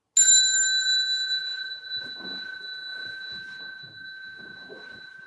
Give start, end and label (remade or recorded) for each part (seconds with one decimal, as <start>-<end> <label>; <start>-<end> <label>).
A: 0.0-5.3 recorded